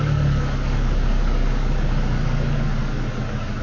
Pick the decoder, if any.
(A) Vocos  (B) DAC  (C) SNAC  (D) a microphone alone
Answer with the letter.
B